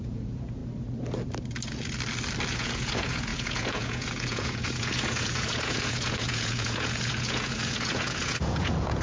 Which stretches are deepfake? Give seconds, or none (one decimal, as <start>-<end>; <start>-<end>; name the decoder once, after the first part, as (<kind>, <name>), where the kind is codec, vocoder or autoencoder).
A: 0.0-0.6 (vocoder, Vocos); 2.5-9.0

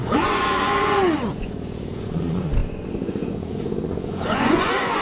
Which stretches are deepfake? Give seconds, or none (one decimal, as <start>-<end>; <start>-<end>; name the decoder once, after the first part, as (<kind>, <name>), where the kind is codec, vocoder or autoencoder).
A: 0.0-5.0 (vocoder, Vocos)

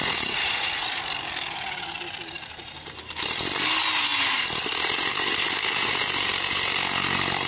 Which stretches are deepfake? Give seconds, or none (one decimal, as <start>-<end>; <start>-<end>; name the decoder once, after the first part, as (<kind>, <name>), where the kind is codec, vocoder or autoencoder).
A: 0.0-1.0 (vocoder, Vocos)

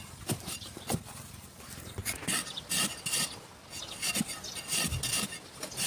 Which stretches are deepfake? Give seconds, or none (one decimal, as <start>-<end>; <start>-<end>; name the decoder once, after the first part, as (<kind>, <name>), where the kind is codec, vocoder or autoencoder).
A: none

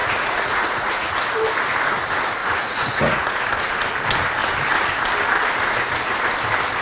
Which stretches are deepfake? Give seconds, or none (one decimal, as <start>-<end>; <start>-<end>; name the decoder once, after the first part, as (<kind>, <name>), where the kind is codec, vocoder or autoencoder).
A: 0.0-1.1 (vocoder, Vocos); 2.4-3.4